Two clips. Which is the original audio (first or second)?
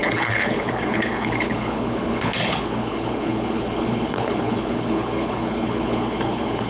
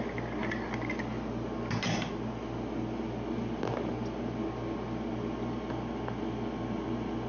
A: second